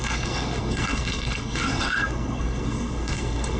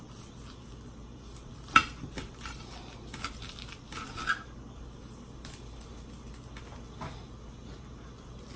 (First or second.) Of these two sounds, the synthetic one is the first